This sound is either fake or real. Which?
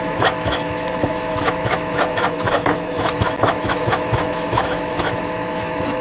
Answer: fake